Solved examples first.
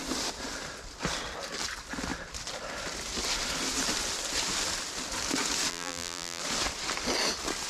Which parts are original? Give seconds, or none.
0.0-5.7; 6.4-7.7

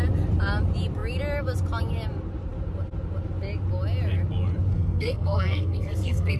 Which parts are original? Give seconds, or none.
0.0-4.7

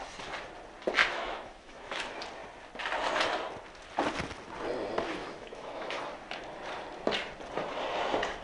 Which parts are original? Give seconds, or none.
0.0-1.0; 2.0-5.2; 6.0-8.4

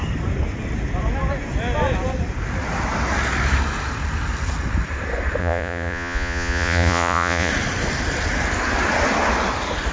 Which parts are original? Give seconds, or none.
0.0-5.4; 7.5-9.9